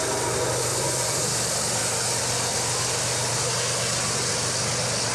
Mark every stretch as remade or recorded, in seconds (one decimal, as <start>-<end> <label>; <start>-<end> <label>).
0.0-0.7 recorded; 0.7-1.2 remade; 1.2-5.1 recorded